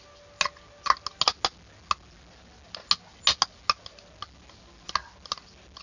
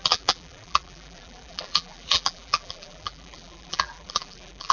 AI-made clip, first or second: second